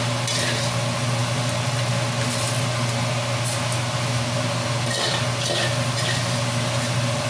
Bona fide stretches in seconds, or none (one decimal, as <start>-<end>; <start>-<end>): 0.0-7.3